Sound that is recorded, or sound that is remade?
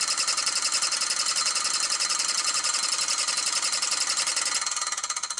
recorded